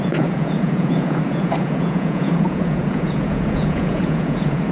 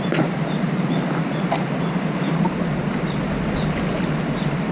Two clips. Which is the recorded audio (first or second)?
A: second